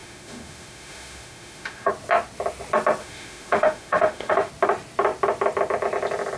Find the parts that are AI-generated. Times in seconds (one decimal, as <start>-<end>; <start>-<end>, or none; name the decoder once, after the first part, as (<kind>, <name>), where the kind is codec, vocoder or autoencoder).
0.0-1.9 (autoencoder, DAC-VAE); 3.0-4.5